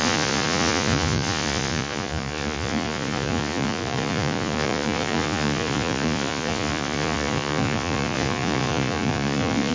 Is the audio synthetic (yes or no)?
yes